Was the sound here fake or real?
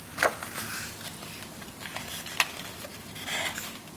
real